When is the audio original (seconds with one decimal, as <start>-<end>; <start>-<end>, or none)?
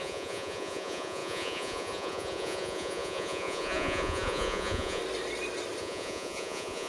5.0-5.8